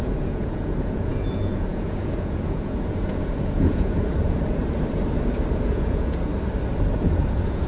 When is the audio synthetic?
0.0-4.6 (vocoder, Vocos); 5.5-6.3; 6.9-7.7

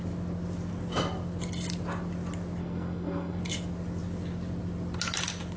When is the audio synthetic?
2.6-3.4 (codec, SNAC)

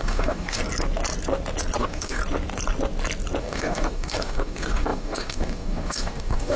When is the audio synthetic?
0.0-0.6 (codec, DAC); 1.8-2.2; 3.4-6.6

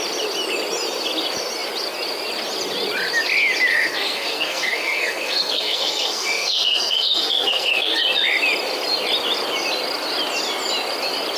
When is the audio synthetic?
3.7-8.0 (codec, SNAC)

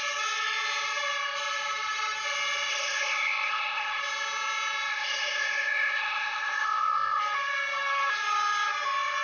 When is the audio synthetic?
2.7-4.0 (codec, ZipCodec); 4.9-7.2

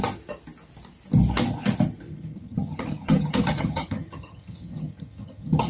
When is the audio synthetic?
2.1-5.7 (vocoder, HiFi-GAN)

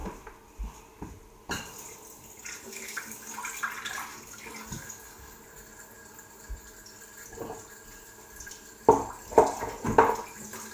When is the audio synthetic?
2.4-3.4 (codec, DAC); 4.1-5.4

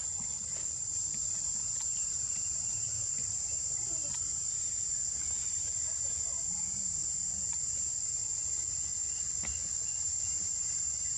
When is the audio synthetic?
0.0-7.0 (vocoder, BigVGAN v2); 7.5-8.2; 10.0-11.2